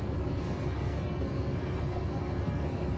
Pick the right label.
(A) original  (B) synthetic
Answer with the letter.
B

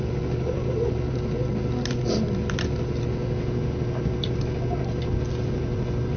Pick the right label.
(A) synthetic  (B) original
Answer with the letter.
B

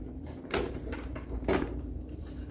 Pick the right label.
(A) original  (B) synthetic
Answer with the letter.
B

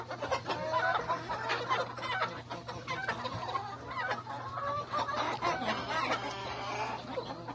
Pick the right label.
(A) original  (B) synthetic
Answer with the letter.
A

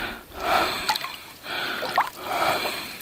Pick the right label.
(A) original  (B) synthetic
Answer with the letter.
A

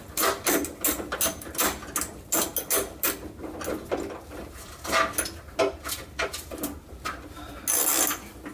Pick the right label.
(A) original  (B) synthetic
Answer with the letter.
A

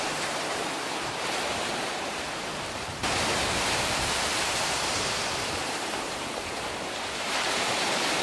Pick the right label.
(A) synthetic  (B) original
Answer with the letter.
A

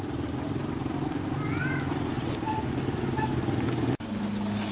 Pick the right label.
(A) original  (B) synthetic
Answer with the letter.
A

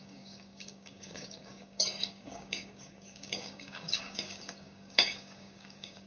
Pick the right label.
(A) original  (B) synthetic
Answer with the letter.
B